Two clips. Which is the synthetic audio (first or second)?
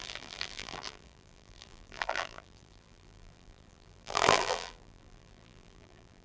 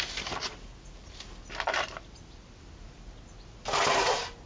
first